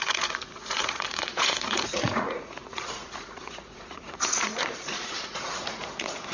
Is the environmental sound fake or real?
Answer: fake